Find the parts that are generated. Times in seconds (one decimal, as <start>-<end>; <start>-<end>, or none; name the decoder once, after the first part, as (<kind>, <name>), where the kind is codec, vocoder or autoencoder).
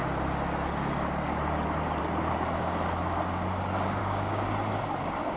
4.0-4.5 (codec, DAC)